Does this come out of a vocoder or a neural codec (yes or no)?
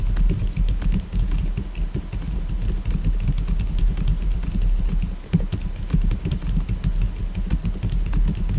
no